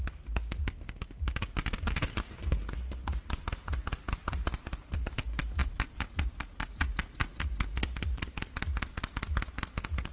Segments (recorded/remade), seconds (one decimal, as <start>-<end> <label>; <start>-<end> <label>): 0.0-5.6 recorded; 5.6-6.1 remade; 6.1-10.1 recorded